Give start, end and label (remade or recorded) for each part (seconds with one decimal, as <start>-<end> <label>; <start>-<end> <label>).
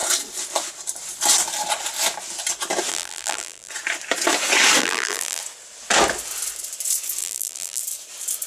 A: 0.0-2.9 recorded; 2.9-3.7 remade; 3.7-4.8 recorded; 4.8-5.4 remade; 5.4-7.2 recorded; 7.2-7.8 remade; 7.8-8.5 recorded